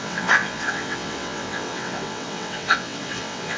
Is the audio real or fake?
fake